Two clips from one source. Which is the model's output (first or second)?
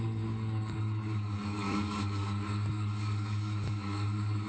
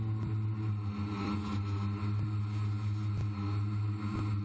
first